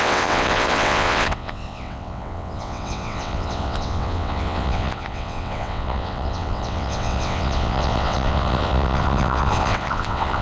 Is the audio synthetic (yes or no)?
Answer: yes